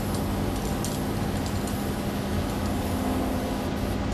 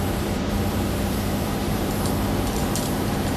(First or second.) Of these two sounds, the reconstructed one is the second